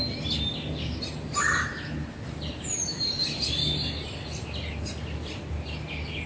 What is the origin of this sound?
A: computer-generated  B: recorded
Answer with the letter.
B